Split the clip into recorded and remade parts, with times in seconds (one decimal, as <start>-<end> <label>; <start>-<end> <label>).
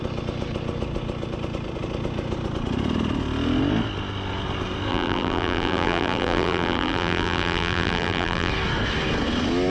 0.0-4.9 recorded; 4.9-8.5 remade; 8.5-9.7 recorded